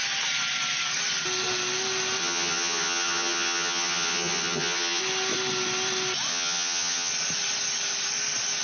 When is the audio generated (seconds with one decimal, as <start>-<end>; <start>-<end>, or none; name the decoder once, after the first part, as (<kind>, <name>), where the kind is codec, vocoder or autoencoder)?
2.2-5.0 (vocoder, HiFi-GAN); 6.3-7.1